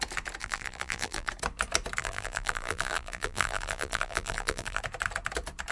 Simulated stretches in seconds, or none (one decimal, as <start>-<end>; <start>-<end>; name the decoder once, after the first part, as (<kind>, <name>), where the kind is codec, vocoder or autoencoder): 0.4-1.3 (vocoder, BigVGAN v2); 2.0-4.8